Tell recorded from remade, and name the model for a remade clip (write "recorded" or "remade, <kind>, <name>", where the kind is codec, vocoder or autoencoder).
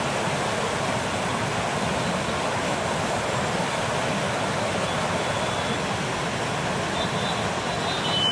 recorded